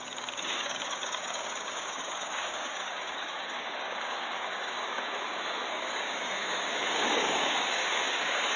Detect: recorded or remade remade